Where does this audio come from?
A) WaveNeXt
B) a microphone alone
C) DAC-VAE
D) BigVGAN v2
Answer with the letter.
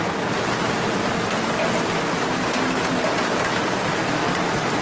B